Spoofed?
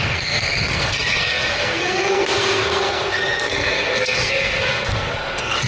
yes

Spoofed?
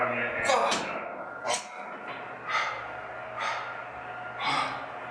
no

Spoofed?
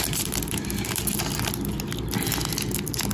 no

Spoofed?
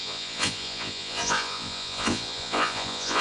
yes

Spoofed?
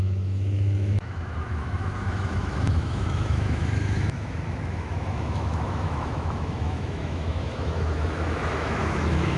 yes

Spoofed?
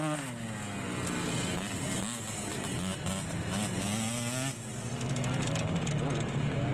no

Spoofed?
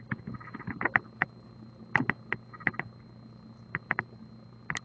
no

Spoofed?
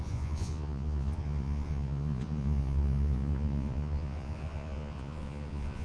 yes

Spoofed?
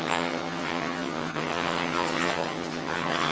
yes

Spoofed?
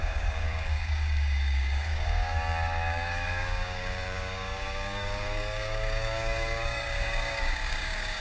yes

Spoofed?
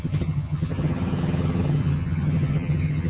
yes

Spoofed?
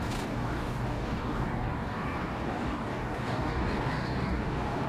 yes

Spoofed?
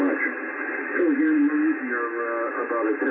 no